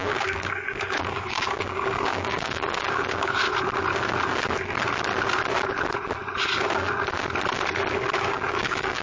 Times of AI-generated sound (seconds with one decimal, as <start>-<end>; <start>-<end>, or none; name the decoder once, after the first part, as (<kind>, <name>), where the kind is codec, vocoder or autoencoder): 0.0-3.5 (codec, DAC); 8.2-9.0